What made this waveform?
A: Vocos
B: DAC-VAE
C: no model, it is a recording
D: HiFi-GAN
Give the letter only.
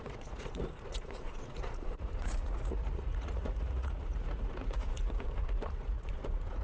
A